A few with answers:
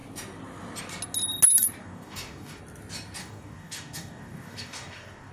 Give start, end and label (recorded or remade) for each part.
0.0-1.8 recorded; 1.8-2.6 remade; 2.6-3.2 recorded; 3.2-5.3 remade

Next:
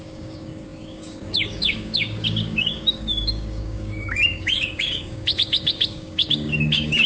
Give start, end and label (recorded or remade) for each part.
0.0-7.1 remade